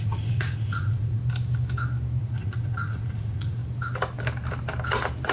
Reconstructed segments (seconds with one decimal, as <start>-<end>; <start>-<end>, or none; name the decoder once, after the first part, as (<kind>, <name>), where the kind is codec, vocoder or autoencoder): 0.0-1.2 (vocoder, Vocos); 2.2-3.6